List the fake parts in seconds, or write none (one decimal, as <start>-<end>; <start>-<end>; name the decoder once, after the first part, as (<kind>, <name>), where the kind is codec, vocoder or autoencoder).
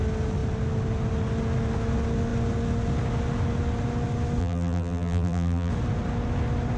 4.4-5.7 (vocoder, BigVGAN v2)